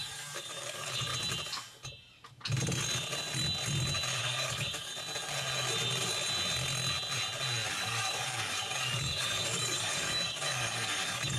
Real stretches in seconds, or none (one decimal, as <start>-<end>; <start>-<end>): 1.1-4.2; 4.9-7.7